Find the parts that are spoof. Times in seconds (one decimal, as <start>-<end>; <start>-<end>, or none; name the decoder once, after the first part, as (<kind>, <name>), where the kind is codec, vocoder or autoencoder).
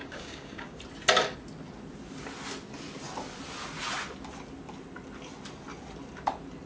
0.0-0.8 (codec, DAC)